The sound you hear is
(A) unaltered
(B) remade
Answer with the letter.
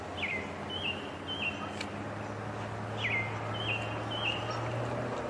A